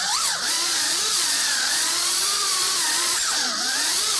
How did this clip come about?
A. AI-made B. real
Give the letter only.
A